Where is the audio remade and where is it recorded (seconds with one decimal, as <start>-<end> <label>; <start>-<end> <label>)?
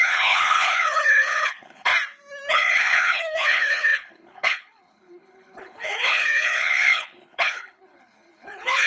0.0-1.9 remade; 1.9-2.5 recorded; 2.5-8.9 remade